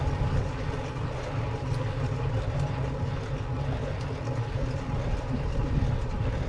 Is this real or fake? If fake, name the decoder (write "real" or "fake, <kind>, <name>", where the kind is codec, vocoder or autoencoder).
real